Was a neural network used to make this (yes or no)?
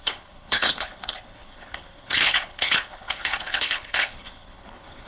yes